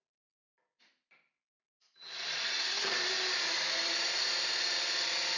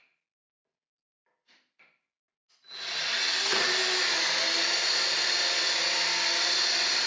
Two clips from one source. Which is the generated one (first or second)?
first